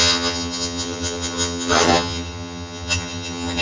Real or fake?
fake